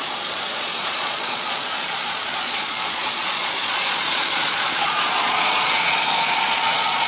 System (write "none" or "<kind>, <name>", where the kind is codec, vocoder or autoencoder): vocoder, Vocos